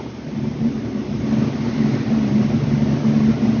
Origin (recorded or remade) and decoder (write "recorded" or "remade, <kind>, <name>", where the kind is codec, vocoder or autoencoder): remade, vocoder, BigVGAN v2